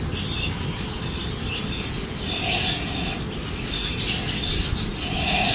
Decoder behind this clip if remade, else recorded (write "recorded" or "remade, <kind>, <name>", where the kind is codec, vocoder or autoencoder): recorded